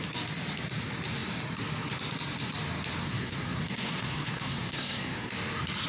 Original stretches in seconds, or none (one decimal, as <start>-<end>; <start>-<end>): 0.0-3.0; 5.3-5.9